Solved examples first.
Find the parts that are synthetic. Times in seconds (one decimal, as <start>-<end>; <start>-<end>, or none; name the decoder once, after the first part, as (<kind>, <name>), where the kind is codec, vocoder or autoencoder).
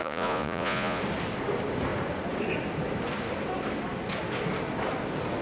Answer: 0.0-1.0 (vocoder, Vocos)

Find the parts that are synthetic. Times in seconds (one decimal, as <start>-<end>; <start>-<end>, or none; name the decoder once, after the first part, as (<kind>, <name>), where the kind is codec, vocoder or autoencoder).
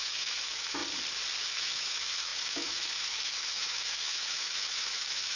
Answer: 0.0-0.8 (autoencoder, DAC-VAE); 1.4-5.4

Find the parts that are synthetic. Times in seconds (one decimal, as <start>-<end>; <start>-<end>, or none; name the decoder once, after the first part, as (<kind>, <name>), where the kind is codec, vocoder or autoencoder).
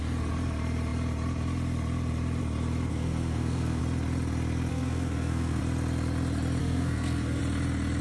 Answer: 2.9-3.8 (codec, SNAC); 4.7-5.6; 6.6-7.4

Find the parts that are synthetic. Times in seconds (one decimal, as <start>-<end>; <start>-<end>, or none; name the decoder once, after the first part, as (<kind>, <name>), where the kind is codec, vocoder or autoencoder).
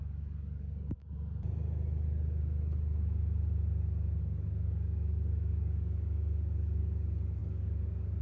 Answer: 0.0-1.0 (codec, DAC); 4.2-8.2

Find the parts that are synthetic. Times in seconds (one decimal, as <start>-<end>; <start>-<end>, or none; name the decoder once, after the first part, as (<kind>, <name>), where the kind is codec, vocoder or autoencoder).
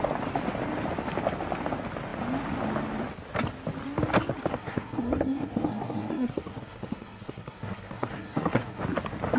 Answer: 4.5-8.8 (codec, SNAC)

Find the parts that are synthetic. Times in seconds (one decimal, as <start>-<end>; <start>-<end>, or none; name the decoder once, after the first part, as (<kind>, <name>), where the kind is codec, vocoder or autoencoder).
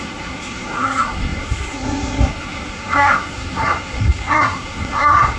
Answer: 0.0-5.4 (codec, SNAC)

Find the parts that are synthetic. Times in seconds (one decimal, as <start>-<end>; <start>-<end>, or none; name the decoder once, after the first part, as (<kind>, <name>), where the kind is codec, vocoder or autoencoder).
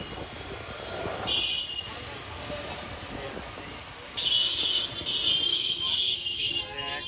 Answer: 4.1-4.9 (codec, DAC); 5.5-6.6